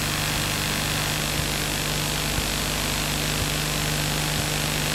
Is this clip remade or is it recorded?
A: recorded